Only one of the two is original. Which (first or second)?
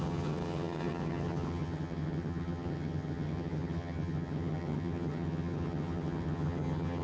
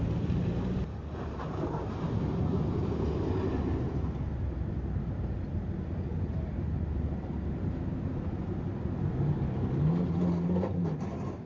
second